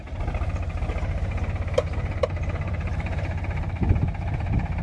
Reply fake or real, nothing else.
real